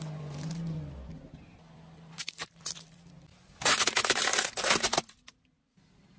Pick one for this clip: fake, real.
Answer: real